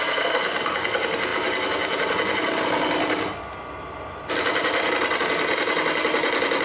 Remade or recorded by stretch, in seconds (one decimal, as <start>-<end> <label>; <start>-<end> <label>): 0.0-6.6 recorded